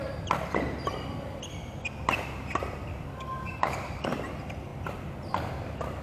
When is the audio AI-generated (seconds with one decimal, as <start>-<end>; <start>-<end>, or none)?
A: 2.9-4.2

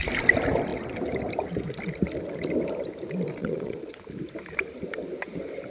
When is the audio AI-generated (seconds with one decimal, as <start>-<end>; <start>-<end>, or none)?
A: 3.4-4.0

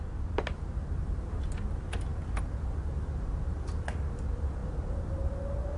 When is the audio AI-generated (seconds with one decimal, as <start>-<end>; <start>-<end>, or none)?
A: none

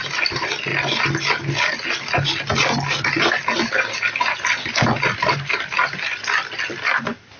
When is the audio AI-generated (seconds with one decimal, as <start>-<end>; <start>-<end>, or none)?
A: none

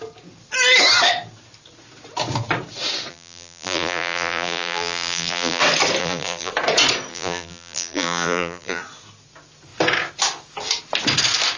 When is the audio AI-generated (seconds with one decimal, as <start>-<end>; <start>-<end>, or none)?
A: 3.1-5.6; 6.0-6.5; 7.1-8.8

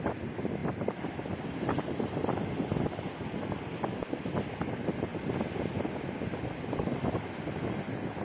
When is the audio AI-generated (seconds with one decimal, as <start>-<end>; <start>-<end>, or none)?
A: none

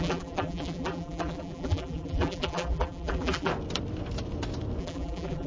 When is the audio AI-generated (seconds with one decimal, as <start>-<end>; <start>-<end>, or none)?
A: 0.0-3.5; 4.8-5.5